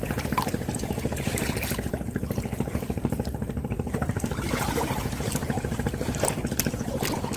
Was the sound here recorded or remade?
remade